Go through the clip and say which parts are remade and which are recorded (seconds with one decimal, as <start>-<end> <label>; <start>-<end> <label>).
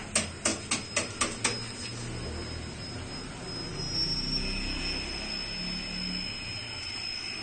0.0-7.4 recorded